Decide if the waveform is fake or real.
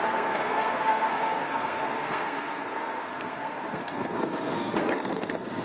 fake